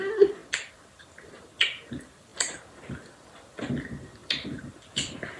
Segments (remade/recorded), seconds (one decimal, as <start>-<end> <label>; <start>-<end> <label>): 0.0-5.4 recorded

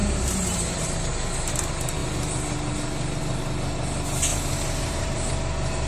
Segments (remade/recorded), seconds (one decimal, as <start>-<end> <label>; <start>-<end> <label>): 0.0-1.0 remade; 1.0-4.3 recorded; 4.3-5.3 remade; 5.3-5.9 recorded

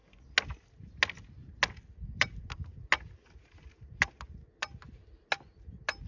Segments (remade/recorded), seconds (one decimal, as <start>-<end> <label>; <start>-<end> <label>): 0.0-6.1 recorded

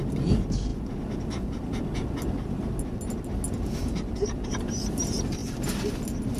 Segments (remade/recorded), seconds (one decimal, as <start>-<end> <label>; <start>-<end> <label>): 0.0-6.4 recorded

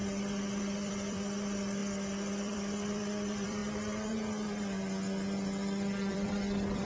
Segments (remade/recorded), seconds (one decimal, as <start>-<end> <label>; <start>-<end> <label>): 0.0-0.6 recorded; 0.6-3.6 remade; 3.6-6.1 recorded; 6.1-6.8 remade